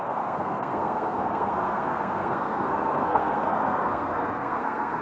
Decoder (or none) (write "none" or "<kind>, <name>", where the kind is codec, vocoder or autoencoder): codec, SNAC